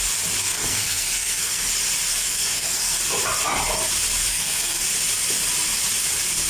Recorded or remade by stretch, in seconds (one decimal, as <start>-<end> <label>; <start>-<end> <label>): 0.0-0.4 recorded; 0.4-1.7 remade; 1.7-2.1 recorded; 2.1-3.0 remade; 3.0-4.3 recorded; 4.3-4.8 remade; 4.8-6.5 recorded